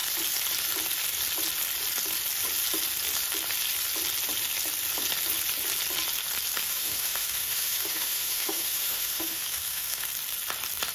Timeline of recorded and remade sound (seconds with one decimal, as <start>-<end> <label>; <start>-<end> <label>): 0.0-6.7 recorded; 6.7-10.1 remade; 10.1-10.9 recorded